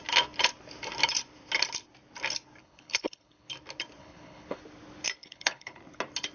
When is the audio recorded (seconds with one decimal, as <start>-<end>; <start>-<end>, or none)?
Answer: 0.0-2.6; 3.5-4.0; 4.6-5.2; 5.8-6.3